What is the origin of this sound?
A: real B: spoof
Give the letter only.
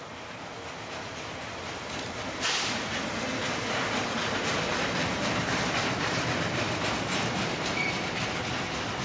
A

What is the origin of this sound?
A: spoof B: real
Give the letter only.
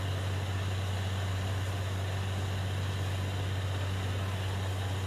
B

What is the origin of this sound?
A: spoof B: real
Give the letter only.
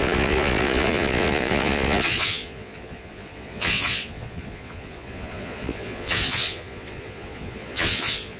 A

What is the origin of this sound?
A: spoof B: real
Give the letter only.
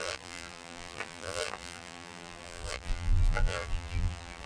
A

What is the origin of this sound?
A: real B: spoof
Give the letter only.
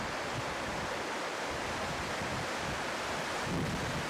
A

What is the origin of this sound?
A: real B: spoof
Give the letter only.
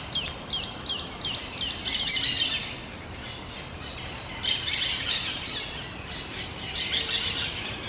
A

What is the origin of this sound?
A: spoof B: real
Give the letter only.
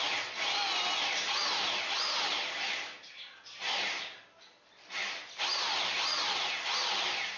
B